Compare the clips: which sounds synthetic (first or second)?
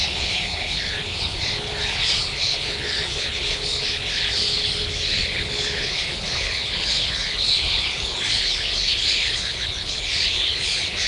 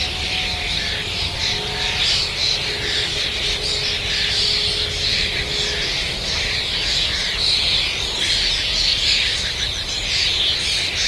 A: first